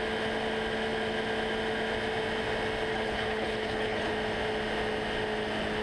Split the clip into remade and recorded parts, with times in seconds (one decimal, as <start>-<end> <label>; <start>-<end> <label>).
0.0-2.9 recorded; 2.9-4.1 remade; 4.1-5.8 recorded